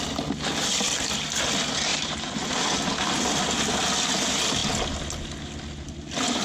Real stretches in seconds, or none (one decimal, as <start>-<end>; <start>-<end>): 0.0-1.9; 2.5-6.4